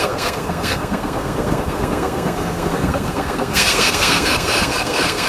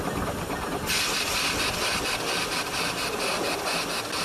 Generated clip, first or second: first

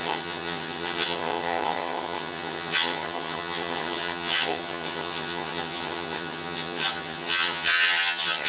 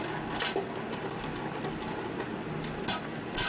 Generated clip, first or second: first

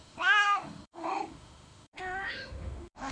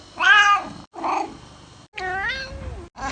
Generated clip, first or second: first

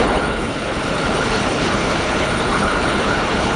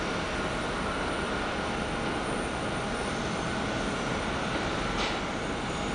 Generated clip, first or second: first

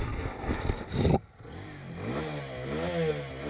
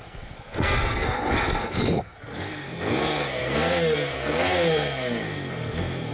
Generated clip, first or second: second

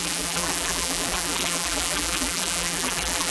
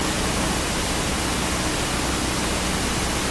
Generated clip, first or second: first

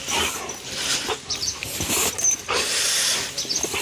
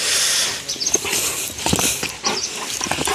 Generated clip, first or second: second